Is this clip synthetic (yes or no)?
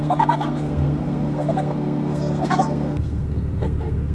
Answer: yes